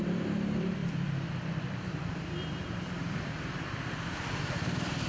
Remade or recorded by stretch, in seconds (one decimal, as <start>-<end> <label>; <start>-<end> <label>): 0.0-0.8 remade; 0.8-1.4 recorded; 1.4-3.3 remade; 3.3-4.4 recorded; 4.4-5.1 remade